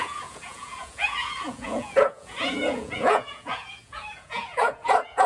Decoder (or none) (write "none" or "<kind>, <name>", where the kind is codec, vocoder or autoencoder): vocoder, Vocos